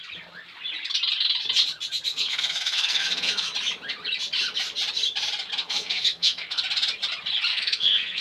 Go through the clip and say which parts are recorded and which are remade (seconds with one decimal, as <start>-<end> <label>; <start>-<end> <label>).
0.0-2.1 recorded; 2.1-3.5 remade; 3.5-5.6 recorded; 5.6-6.6 remade; 6.6-7.5 recorded; 7.5-8.2 remade